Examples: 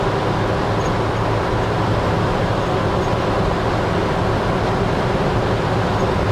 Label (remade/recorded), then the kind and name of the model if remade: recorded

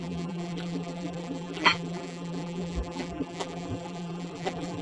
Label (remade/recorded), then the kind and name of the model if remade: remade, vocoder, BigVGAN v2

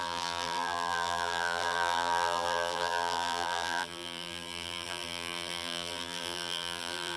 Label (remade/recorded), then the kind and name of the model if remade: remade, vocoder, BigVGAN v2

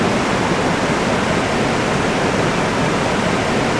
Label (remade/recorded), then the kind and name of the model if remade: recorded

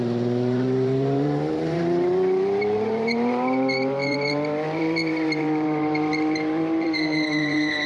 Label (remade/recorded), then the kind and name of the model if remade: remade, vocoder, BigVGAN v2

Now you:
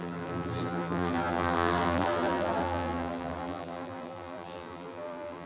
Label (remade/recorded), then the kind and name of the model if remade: remade, vocoder, BigVGAN v2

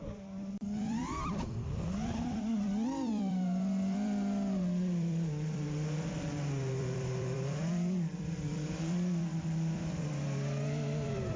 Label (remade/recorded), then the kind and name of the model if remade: remade, vocoder, BigVGAN v2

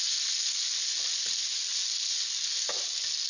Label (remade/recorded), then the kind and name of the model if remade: recorded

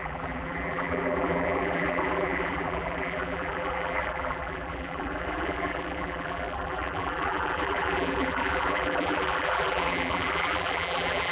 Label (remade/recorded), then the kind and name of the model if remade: remade, vocoder, BigVGAN v2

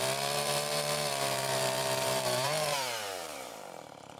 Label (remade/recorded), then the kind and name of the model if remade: remade, vocoder, BigVGAN v2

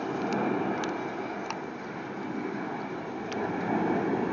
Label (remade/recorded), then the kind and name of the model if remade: recorded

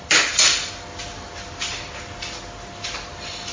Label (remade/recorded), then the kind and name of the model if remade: recorded